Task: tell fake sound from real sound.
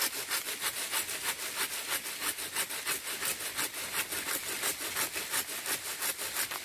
real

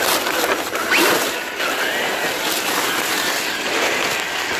real